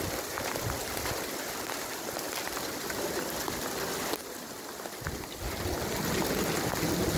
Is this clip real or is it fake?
real